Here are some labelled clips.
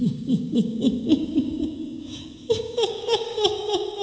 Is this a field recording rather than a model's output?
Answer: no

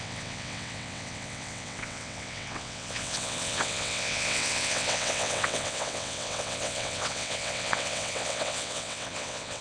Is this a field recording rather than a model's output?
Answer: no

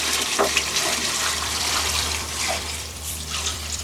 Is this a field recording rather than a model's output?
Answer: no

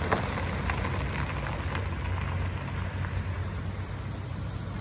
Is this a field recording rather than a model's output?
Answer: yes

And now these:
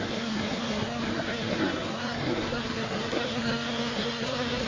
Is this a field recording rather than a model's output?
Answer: no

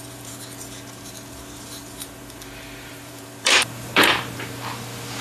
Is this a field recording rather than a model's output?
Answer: no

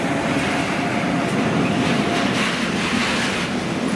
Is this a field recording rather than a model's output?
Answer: yes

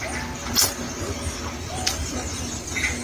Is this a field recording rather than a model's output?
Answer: yes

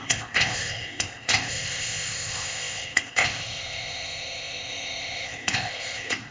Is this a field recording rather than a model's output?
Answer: no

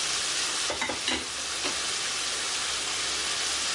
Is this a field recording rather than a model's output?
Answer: yes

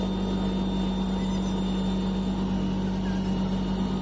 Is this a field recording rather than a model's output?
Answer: yes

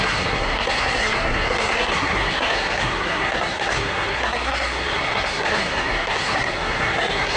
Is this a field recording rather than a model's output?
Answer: no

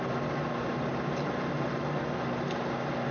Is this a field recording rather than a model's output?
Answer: yes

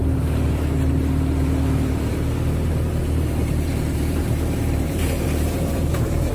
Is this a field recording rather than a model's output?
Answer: no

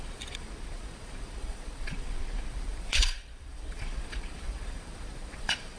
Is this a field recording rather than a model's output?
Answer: no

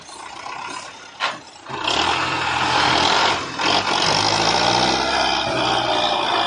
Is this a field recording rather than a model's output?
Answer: yes